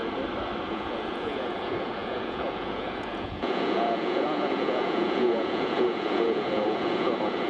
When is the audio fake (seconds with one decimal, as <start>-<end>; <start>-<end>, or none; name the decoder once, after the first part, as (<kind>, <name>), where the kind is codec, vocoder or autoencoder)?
0.7-7.5 (vocoder, Vocos)